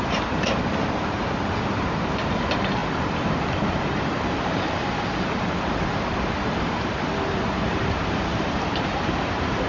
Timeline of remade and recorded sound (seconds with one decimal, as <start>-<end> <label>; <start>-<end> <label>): 0.0-9.7 remade